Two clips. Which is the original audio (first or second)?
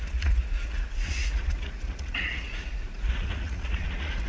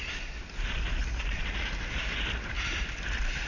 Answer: second